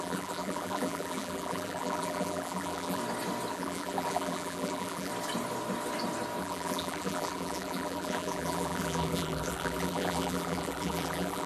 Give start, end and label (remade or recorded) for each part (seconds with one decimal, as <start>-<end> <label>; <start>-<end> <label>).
0.0-3.0 remade; 3.0-3.5 recorded; 3.5-5.1 remade; 5.1-6.4 recorded; 6.4-11.5 remade